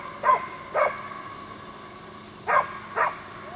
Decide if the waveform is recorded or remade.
recorded